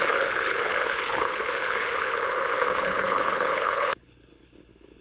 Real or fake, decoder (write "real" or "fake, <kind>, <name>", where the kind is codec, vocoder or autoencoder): fake, codec, HILCodec